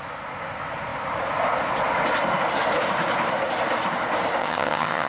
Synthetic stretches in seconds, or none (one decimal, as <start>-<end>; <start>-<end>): 4.4-5.1